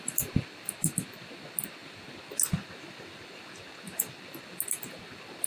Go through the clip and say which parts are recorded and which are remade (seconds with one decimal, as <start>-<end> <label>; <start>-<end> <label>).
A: 0.0-5.5 recorded